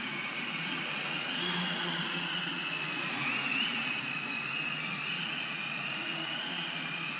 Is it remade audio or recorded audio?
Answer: remade